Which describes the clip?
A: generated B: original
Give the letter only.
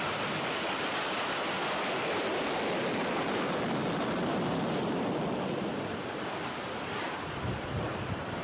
A